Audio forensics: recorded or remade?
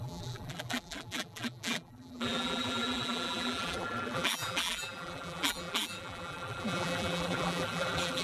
remade